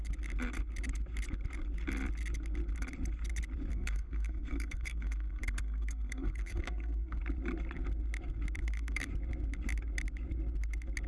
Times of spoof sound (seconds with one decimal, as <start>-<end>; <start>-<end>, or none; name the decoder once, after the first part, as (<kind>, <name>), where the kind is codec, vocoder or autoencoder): 3.7-7.2 (codec, SNAC); 8.6-9.1